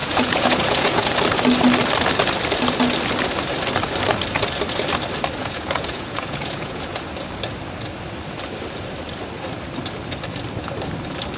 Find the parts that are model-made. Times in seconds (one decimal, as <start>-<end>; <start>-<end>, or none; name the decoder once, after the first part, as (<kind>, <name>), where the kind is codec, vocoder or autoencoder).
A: 0.0-1.1 (vocoder, Vocos); 5.4-7.0